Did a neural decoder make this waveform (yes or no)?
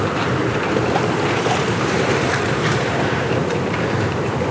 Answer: yes